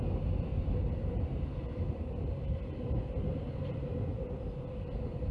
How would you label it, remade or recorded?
recorded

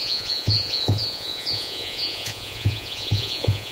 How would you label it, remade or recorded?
remade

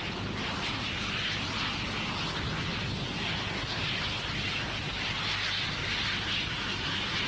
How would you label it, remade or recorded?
recorded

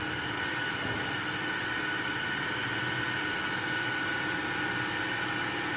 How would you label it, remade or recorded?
recorded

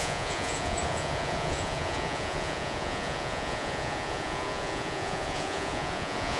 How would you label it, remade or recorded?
remade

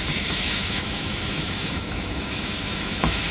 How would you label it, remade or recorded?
remade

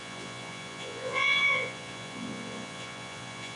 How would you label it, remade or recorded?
remade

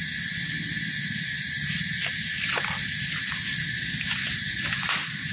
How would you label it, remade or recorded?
recorded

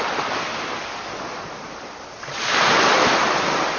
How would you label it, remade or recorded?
recorded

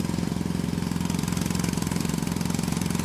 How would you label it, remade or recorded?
recorded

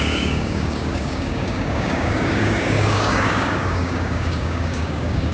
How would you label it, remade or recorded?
remade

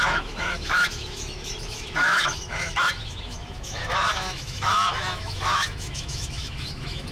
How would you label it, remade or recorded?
remade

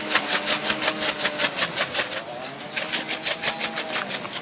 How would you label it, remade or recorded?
recorded